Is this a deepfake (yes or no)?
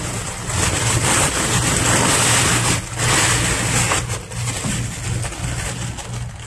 no